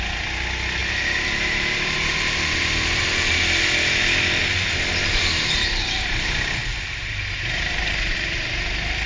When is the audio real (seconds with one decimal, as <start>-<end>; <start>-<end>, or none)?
0.0-0.8; 3.4-4.4; 8.5-9.1